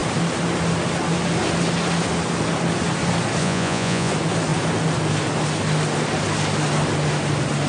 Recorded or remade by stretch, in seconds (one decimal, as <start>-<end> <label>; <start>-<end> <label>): 0.0-3.4 recorded; 3.4-4.1 remade; 4.1-7.7 recorded